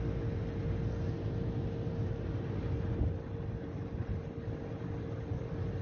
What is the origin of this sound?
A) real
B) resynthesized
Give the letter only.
A